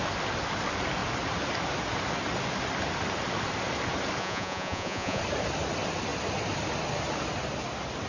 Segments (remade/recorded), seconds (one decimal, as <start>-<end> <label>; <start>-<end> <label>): 0.0-4.2 recorded; 4.2-5.2 remade; 5.2-8.1 recorded